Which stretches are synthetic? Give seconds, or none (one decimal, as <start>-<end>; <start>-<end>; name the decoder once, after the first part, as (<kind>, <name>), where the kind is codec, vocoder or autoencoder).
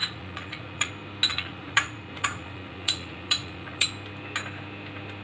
0.0-0.9 (vocoder, Vocos); 1.3-3.9